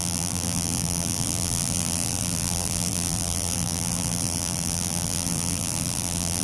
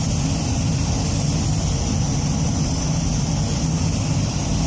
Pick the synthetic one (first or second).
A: first